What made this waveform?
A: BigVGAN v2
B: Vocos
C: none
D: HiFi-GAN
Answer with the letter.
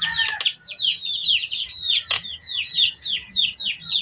B